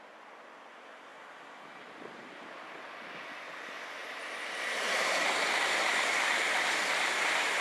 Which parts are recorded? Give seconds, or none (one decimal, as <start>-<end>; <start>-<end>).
1.1-1.8